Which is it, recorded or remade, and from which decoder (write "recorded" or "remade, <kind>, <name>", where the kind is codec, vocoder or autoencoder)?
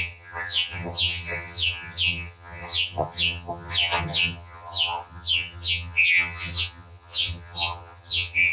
remade, vocoder, HiFi-GAN